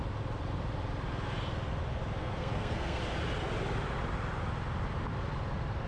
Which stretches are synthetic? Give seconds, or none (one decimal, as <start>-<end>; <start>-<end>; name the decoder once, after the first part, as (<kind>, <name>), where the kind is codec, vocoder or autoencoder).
2.2-3.0 (codec, SNAC)